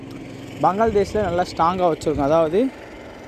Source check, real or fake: real